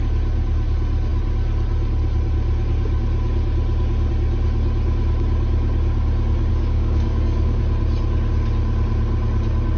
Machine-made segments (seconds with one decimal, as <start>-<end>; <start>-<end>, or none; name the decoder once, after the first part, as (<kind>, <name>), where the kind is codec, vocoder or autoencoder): 6.5-7.6 (codec, DAC)